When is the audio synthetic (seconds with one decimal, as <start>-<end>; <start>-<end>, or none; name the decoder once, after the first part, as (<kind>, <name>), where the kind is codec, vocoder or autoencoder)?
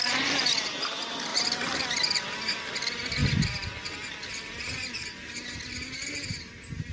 none